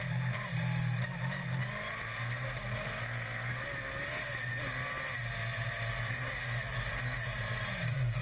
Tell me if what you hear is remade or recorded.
recorded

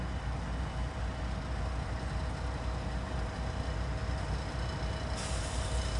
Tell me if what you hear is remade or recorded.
recorded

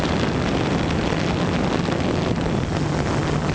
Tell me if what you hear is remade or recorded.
recorded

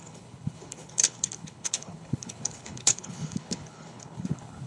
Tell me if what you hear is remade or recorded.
remade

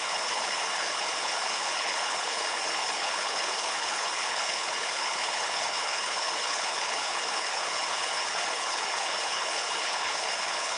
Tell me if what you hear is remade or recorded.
remade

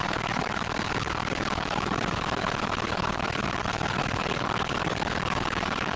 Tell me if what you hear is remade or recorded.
remade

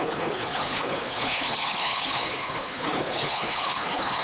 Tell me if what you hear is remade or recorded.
remade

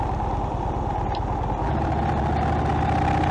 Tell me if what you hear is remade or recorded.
recorded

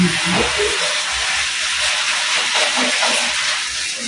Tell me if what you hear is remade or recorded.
recorded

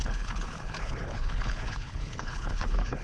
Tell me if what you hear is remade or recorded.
remade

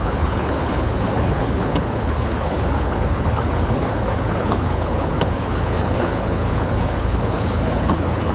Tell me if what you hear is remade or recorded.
remade